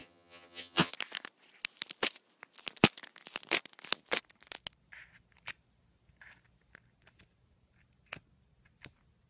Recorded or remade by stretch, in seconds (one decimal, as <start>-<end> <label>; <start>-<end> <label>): 0.0-0.9 remade; 0.9-9.3 recorded